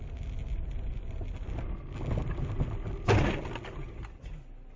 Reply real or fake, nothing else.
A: real